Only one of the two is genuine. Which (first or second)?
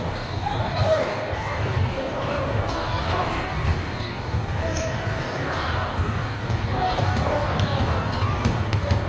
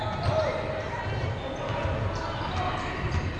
second